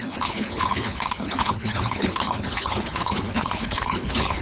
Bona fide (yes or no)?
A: no